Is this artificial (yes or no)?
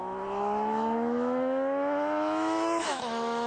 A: yes